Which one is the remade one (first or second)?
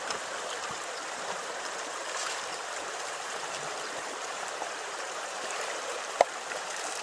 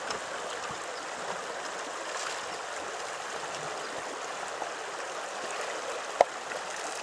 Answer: first